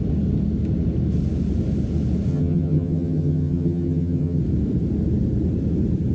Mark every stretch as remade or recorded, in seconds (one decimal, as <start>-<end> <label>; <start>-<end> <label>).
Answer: 0.0-2.3 recorded; 2.3-4.4 remade; 4.4-6.1 recorded